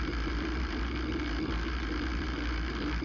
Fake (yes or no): no